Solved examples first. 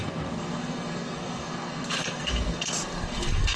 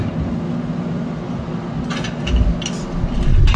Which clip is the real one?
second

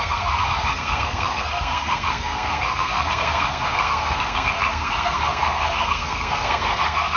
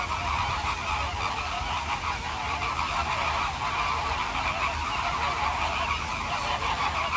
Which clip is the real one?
second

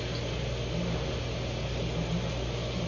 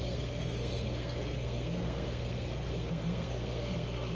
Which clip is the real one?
first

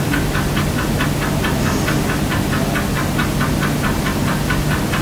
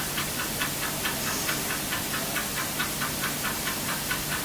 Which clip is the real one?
first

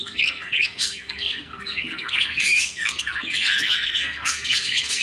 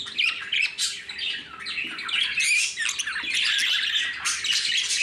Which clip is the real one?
second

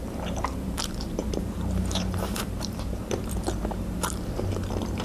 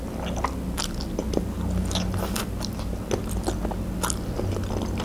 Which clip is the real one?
second